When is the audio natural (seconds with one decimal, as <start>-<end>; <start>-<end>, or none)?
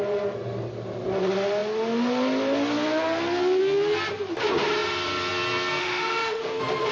0.0-5.8; 6.4-6.9